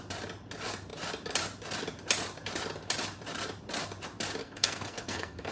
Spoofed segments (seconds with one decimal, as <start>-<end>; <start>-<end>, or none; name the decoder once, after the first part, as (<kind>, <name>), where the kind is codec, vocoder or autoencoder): 4.4-5.5 (codec, SNAC)